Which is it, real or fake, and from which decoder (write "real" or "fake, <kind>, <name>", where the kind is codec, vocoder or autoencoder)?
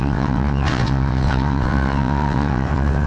fake, vocoder, WaveNeXt